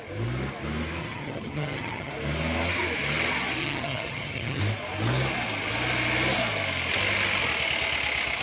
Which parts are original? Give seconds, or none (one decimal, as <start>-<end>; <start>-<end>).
0.0-1.0; 2.1-3.6; 4.6-8.4

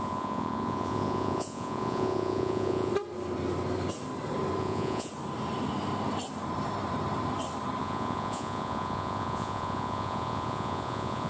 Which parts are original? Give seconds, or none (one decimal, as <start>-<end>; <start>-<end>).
2.9-4.6; 5.1-7.8

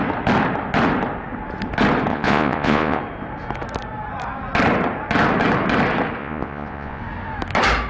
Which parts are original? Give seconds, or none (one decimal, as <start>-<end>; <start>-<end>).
0.0-2.1; 3.0-6.2; 7.0-7.9

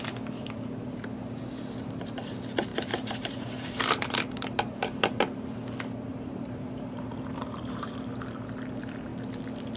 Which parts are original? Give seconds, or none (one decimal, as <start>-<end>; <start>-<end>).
0.0-0.8; 2.2-2.7; 5.5-6.1; 8.0-9.8

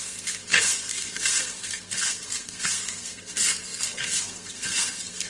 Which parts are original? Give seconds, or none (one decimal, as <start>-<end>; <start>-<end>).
none

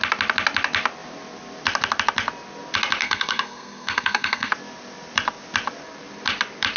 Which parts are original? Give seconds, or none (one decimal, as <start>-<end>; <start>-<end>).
0.0-3.0; 4.5-6.8